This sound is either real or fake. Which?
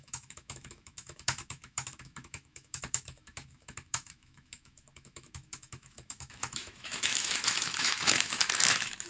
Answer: fake